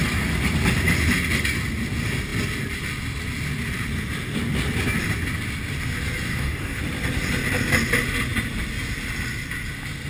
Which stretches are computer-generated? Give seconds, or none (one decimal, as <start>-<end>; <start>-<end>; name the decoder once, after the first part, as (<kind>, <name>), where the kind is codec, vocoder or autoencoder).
6.3-6.8 (codec, DAC)